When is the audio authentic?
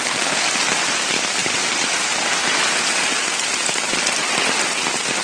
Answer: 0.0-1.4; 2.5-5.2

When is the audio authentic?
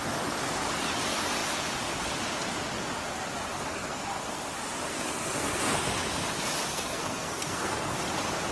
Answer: 0.0-3.8; 4.4-4.9; 5.6-6.7; 8.0-8.5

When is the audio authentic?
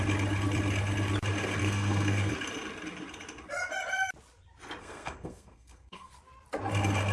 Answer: 0.0-1.6; 2.3-4.8; 6.1-7.1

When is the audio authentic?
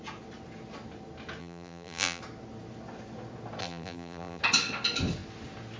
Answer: 0.0-1.4; 2.2-3.6; 4.4-5.8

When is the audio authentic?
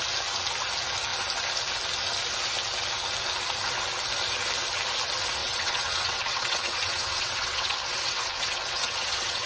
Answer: 0.0-5.4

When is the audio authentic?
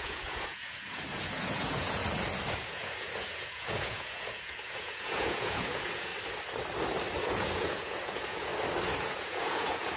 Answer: 2.0-2.5; 6.1-7.2; 8.5-9.0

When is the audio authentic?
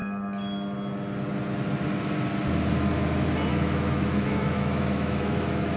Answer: 0.0-3.5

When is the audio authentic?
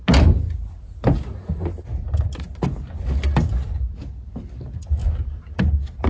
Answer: 0.0-6.1